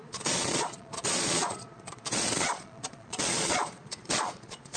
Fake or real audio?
fake